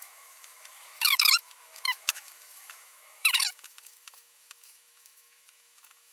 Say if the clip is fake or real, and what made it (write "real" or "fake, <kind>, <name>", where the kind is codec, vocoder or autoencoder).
fake, autoencoder, DAC-VAE